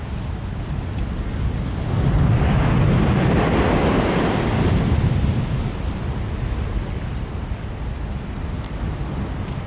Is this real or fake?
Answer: real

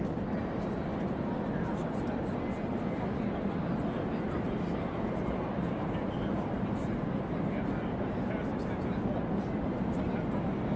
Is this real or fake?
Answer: real